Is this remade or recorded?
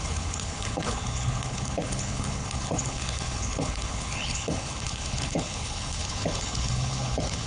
remade